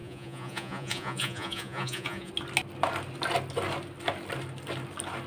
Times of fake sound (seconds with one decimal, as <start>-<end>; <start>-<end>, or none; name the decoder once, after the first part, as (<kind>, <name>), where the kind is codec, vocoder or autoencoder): 0.0-2.3 (vocoder, Vocos)